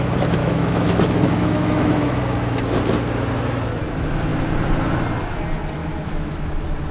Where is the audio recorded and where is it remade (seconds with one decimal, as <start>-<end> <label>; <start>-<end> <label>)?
0.0-0.4 recorded; 0.4-2.2 remade; 2.2-5.8 recorded; 5.8-6.5 remade; 6.5-6.9 recorded